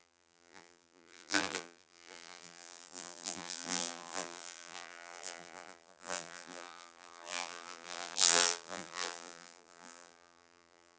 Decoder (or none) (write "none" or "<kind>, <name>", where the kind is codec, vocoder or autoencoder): vocoder, BigVGAN v2